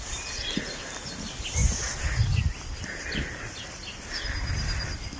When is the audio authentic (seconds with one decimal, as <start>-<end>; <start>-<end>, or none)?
0.0-5.2